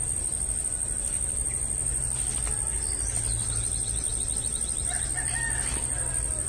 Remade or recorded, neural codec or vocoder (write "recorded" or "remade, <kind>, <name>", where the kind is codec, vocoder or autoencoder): recorded